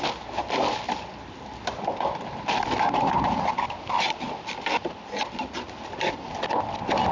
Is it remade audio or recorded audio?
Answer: recorded